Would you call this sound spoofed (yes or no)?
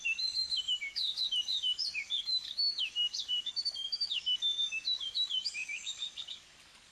yes